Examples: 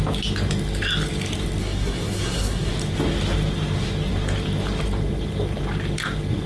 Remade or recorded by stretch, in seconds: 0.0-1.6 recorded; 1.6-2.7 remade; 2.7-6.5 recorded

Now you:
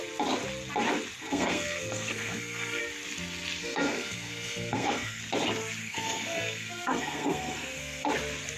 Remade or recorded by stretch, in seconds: 0.0-1.2 recorded; 1.2-2.8 remade; 2.8-3.6 recorded; 3.6-5.2 remade; 5.2-5.8 recorded; 5.8-8.1 remade; 8.1-8.6 recorded

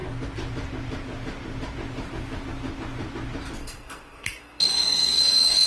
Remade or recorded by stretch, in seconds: 0.0-3.6 recorded; 3.6-5.7 remade

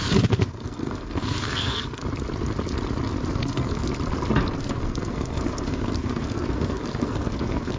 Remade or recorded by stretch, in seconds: 0.0-2.0 remade; 2.0-3.3 recorded; 3.3-3.9 remade; 3.9-4.6 recorded; 4.6-7.8 remade